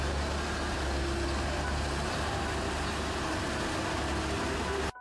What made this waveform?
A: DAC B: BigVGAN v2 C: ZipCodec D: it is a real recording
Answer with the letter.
D